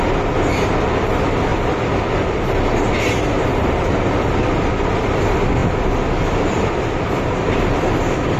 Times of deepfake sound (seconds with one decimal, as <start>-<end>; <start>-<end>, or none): 3.5-4.1